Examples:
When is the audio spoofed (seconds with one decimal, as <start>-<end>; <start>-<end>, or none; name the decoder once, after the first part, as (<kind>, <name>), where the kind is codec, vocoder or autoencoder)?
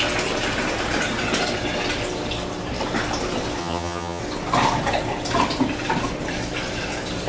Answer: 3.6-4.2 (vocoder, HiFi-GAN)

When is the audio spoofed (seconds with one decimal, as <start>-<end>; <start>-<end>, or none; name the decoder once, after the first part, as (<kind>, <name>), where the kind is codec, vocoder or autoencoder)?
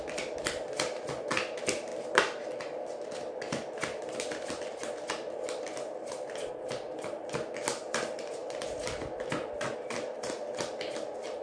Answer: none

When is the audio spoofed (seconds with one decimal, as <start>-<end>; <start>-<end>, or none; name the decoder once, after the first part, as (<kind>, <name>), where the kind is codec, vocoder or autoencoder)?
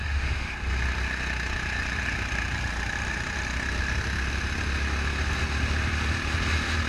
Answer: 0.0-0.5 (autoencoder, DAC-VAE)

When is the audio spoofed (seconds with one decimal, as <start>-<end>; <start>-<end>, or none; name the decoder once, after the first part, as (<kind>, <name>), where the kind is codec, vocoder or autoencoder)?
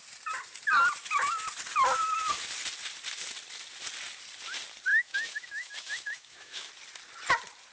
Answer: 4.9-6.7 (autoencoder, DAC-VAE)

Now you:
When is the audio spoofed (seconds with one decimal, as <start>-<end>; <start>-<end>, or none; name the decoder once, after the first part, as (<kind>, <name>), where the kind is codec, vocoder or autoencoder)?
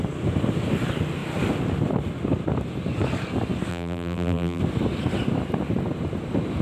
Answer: 3.7-4.6 (vocoder, BigVGAN v2)